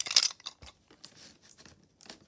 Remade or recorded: recorded